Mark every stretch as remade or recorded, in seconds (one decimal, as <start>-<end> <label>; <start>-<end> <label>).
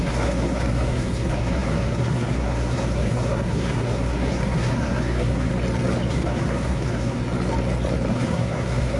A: 0.0-5.5 remade; 5.5-6.1 recorded; 6.1-7.2 remade; 7.2-8.1 recorded; 8.1-9.0 remade